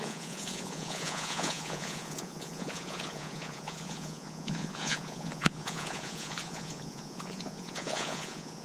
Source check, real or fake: fake